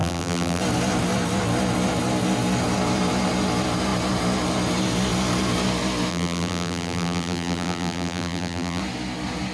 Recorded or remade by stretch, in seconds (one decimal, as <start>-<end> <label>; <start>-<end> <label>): 0.0-0.6 remade; 0.6-6.1 recorded; 6.1-8.8 remade; 8.8-9.5 recorded